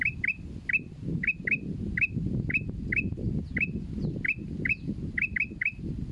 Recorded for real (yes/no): yes